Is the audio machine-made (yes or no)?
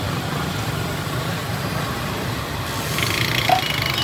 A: yes